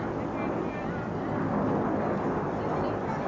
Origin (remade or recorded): recorded